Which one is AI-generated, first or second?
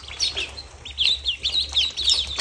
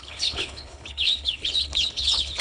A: second